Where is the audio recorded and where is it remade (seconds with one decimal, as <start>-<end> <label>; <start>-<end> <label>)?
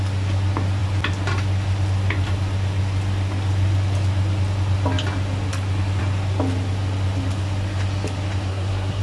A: 0.0-8.5 recorded; 8.5-9.0 remade